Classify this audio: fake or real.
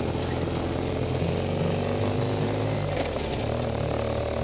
real